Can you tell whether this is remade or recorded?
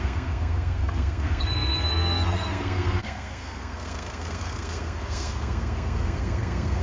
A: remade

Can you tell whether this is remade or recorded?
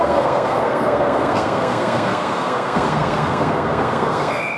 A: remade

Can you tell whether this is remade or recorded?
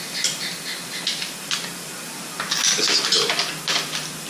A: recorded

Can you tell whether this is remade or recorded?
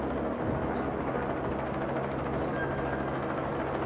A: recorded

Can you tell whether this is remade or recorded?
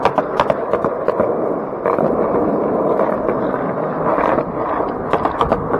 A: recorded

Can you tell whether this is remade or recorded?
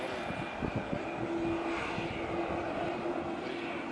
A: recorded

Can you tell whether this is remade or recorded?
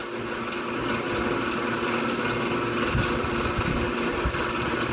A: recorded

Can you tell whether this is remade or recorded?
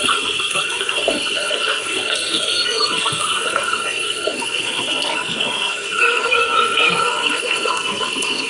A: remade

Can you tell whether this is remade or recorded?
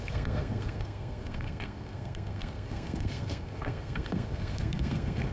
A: remade